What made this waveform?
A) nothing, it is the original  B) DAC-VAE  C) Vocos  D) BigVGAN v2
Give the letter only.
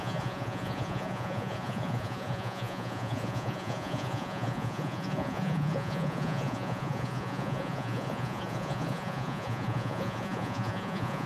C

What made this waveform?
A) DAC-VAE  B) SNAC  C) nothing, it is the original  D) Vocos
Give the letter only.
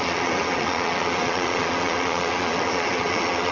D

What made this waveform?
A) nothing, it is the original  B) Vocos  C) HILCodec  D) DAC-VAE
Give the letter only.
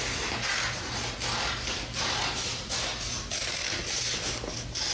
A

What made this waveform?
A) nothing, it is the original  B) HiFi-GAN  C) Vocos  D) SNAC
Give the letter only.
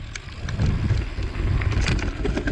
A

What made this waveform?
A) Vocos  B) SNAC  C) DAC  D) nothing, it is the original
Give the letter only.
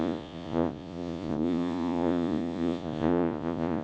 A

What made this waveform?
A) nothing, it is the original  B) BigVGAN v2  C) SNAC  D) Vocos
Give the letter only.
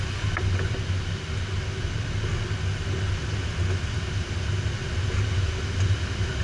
A